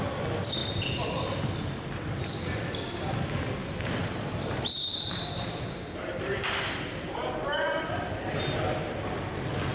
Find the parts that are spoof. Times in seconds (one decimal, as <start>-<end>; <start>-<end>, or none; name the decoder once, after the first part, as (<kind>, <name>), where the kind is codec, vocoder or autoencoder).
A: 3.6-8.4 (vocoder, BigVGAN v2)